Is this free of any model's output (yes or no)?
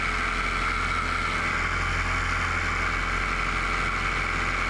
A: yes